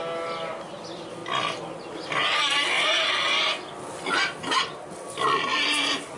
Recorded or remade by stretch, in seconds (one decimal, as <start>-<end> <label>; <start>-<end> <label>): 0.0-6.2 recorded